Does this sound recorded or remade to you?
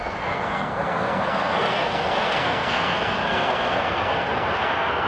remade